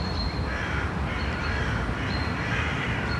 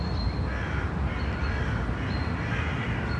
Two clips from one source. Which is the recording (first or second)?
second